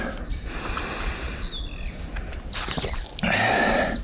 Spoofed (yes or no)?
no